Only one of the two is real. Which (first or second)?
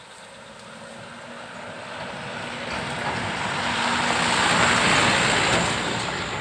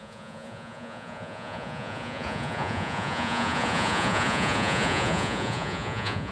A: first